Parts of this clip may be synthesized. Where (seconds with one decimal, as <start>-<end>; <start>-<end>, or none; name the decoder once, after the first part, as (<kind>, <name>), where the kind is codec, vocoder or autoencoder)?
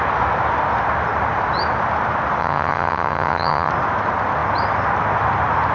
2.4-3.7 (vocoder, HiFi-GAN)